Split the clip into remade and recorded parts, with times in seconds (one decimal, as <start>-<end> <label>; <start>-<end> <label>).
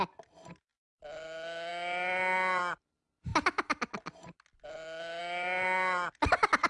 0.0-6.7 recorded